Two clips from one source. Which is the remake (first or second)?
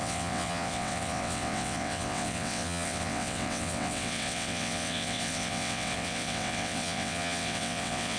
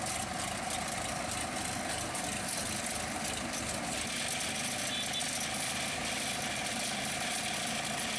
first